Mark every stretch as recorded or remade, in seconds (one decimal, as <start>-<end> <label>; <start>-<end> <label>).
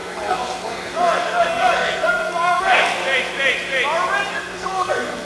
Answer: 0.0-3.0 remade; 3.0-4.3 recorded; 4.3-5.2 remade